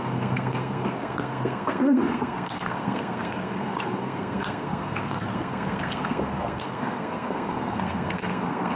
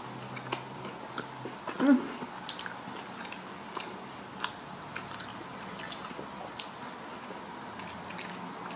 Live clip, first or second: second